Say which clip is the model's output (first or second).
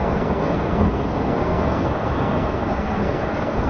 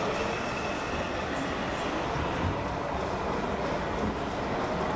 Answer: first